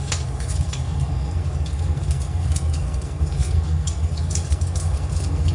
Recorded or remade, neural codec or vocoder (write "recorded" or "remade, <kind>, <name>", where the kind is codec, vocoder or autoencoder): remade, codec, SNAC